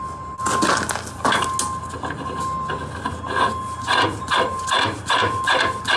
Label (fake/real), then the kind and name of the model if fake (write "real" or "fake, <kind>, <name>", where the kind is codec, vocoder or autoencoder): real